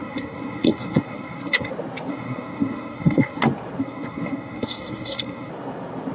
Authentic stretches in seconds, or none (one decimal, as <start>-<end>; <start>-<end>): 1.7-2.1; 3.4-3.8; 5.5-6.1